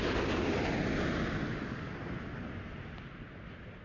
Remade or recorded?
recorded